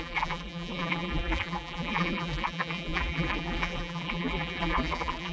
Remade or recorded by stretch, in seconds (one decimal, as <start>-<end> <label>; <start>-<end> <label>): 0.0-5.3 remade